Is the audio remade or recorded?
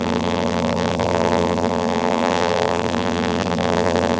remade